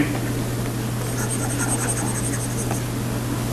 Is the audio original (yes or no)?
yes